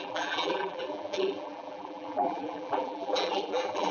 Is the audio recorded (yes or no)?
no